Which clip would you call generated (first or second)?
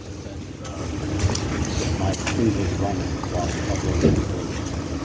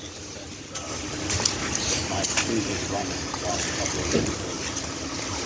second